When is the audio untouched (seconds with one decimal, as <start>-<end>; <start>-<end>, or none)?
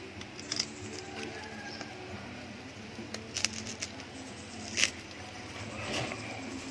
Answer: 0.0-6.7